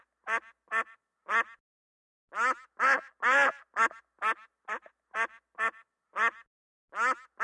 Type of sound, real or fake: real